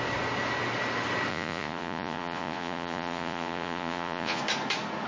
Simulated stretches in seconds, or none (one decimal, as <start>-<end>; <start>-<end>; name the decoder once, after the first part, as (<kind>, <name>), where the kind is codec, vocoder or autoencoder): 1.3-4.4 (vocoder, Vocos)